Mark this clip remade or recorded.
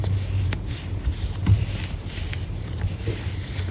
recorded